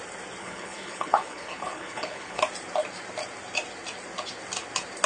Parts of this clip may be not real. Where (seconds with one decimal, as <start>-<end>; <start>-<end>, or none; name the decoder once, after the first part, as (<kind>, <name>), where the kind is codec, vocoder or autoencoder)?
0.4-2.4 (codec, HILCodec)